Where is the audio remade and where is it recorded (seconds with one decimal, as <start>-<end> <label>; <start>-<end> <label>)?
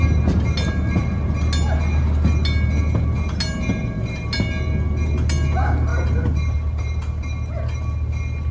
0.0-8.5 recorded